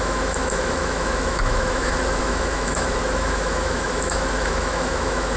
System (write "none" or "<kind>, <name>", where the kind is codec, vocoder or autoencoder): autoencoder, DAC-VAE